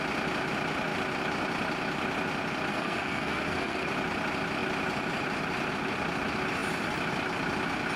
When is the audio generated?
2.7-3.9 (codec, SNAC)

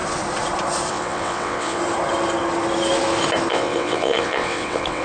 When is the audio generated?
0.9-1.8 (vocoder, WaveNeXt); 3.5-5.0

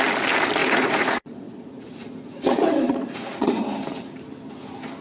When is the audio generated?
0.6-3.6 (vocoder, Vocos)

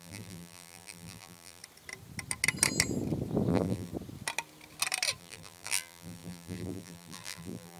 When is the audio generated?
0.0-1.6 (vocoder, BigVGAN v2); 3.5-3.9; 5.2-7.8

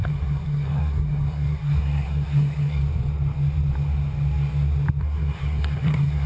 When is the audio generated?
0.0-2.8 (codec, SNAC); 5.0-6.3